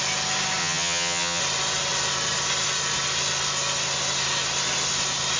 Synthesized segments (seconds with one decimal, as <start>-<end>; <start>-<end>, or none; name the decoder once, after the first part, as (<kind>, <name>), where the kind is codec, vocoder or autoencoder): 0.6-1.4 (vocoder, HiFi-GAN)